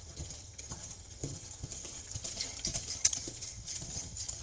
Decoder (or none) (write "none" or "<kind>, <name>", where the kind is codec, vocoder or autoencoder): vocoder, HiFi-GAN